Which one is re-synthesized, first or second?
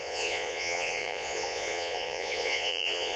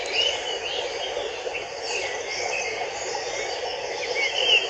first